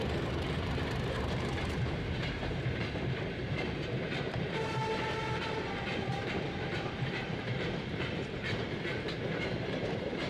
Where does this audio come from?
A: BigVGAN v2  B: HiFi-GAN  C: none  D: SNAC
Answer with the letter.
A